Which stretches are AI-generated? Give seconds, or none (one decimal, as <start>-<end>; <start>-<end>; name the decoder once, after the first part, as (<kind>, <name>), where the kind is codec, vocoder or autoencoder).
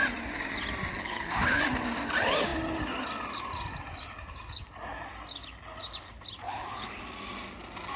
0.9-1.6 (codec, HILCodec); 6.4-7.0